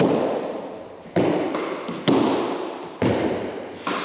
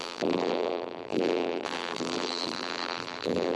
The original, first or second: first